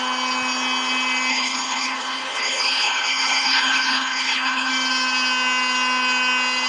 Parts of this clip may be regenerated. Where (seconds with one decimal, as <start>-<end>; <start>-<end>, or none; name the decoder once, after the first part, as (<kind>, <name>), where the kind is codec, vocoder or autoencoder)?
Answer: 1.3-4.7 (codec, HILCodec)